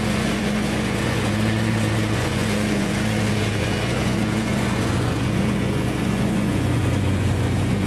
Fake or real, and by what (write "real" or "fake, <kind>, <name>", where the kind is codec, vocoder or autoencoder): fake, vocoder, Vocos